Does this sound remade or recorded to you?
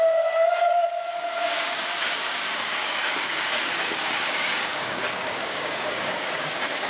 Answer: remade